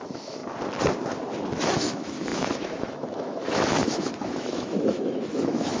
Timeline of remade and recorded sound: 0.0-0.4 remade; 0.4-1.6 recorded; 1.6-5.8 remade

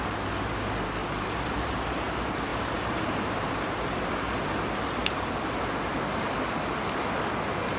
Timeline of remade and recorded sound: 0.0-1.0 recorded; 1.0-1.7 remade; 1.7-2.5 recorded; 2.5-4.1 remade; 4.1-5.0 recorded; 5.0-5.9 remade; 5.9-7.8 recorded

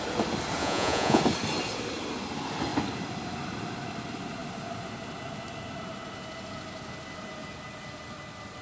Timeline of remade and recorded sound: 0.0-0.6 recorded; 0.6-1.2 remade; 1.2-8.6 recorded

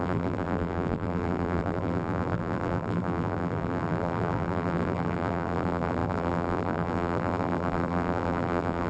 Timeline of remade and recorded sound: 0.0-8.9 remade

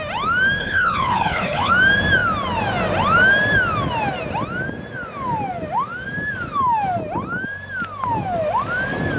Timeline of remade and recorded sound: 0.0-0.6 recorded; 0.6-1.7 remade; 1.7-9.2 recorded

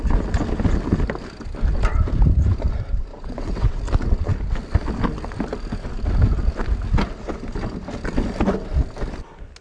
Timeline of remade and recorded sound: 0.0-3.1 recorded; 3.1-3.8 remade; 3.8-9.6 recorded

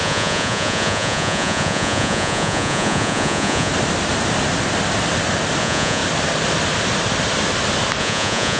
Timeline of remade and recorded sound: 0.0-3.7 remade; 3.7-5.6 recorded; 5.6-6.0 remade; 6.0-8.0 recorded; 8.0-8.6 remade

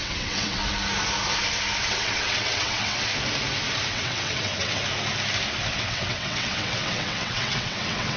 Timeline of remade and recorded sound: 0.0-0.6 remade; 0.6-1.8 recorded; 1.8-3.1 remade; 3.1-3.9 recorded; 3.9-4.8 remade; 4.8-5.8 recorded; 5.8-8.2 remade